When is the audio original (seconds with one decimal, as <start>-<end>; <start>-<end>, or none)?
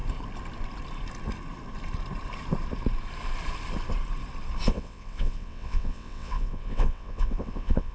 0.0-4.7